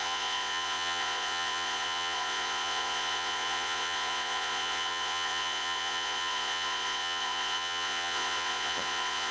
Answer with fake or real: fake